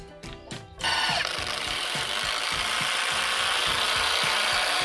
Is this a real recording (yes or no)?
no